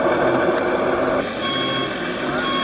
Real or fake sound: real